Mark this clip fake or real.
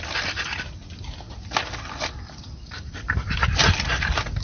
real